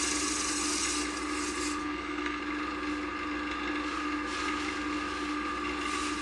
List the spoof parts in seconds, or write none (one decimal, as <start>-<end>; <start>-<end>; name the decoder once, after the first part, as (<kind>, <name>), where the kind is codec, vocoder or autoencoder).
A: 1.8-2.4 (codec, SNAC)